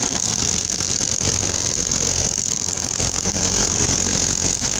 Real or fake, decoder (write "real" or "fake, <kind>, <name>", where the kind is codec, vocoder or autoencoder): fake, codec, SNAC